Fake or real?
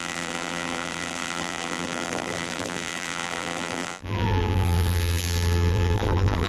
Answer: fake